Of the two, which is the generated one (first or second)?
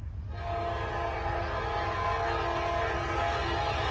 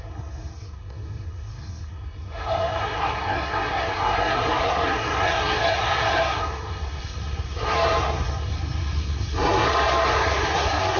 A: second